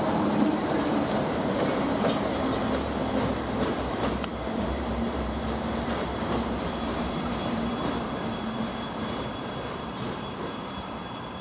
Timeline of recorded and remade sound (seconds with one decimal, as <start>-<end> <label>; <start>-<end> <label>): 0.0-3.0 remade; 3.0-3.7 recorded; 3.7-11.4 remade